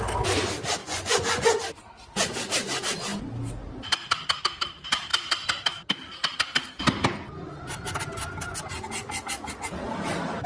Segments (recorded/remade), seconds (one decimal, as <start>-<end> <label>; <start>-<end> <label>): 0.0-0.8 recorded; 0.8-1.6 remade; 1.6-10.5 recorded